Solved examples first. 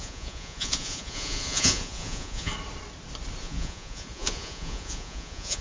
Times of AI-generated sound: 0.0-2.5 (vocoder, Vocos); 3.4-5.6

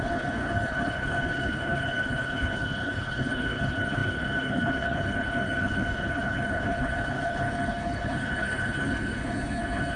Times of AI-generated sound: 0.0-10.0 (codec, HILCodec)

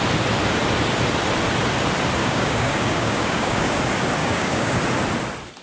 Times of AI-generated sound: 2.2-3.8 (codec, DAC); 4.2-4.8

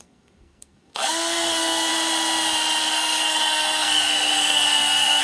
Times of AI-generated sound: 0.0-1.9 (codec, SNAC); 2.8-5.2

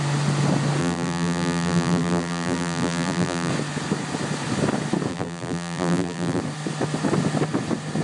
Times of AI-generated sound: 0.8-3.5 (vocoder, BigVGAN v2); 5.1-6.4

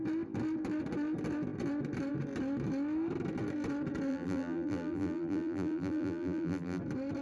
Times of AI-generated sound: 4.1-6.8 (vocoder, BigVGAN v2)